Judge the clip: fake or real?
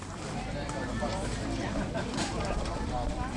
fake